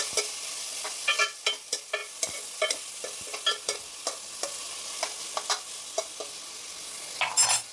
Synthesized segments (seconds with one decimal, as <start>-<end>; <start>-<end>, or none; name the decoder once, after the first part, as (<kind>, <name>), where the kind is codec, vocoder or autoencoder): none